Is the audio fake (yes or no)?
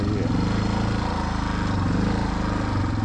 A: no